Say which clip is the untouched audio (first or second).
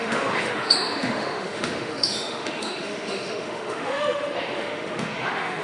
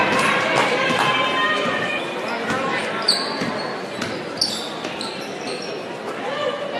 second